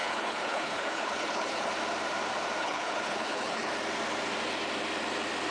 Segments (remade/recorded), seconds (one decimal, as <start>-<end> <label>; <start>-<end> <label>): 0.0-1.7 remade; 1.7-2.6 recorded; 2.6-3.7 remade; 3.7-5.5 recorded